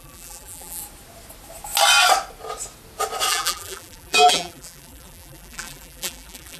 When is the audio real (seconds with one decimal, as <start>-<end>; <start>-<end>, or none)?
0.8-3.3